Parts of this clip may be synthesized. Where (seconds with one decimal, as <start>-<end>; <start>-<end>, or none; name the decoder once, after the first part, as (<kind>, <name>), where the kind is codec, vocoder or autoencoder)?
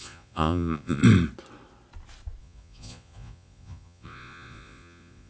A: 0.0-1.0 (vocoder, Vocos); 2.4-5.3